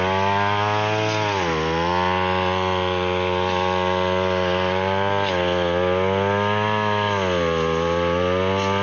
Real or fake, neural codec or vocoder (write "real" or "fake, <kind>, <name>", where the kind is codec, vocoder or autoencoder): real